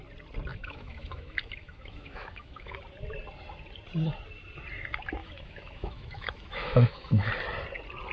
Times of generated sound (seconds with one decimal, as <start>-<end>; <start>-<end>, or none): 0.5-2.8; 5.2-7.3